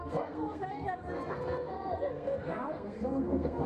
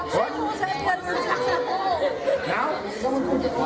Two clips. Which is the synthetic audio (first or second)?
first